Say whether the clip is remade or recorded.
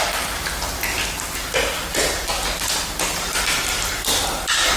recorded